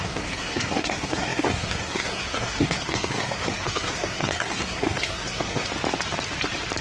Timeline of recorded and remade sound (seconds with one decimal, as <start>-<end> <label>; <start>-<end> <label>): 0.0-5.7 remade; 5.7-6.8 recorded